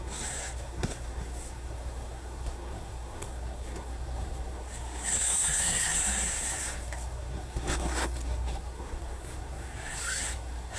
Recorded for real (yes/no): no